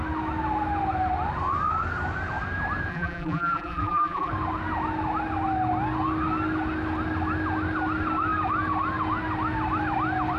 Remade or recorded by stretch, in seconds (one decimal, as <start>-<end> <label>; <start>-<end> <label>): 0.0-2.9 recorded; 2.9-4.3 remade; 4.3-10.4 recorded